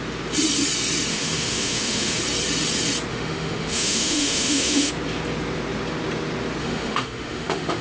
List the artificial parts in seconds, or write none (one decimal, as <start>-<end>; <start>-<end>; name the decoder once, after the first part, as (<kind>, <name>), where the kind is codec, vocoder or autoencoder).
1.1-2.2 (autoencoder, DAC-VAE); 3.1-4.9; 6.6-7.8